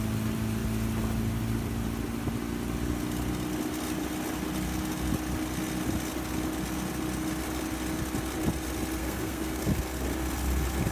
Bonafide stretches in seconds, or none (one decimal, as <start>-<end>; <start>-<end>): 0.0-9.0; 9.6-10.9